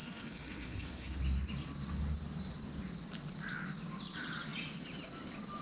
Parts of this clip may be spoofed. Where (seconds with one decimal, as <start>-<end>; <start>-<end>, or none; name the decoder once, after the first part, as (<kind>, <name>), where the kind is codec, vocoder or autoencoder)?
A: 0.0-1.2 (codec, SNAC)